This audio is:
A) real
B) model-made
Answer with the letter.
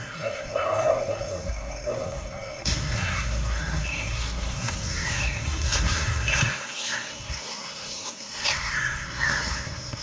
B